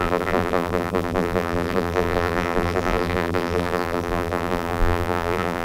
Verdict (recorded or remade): remade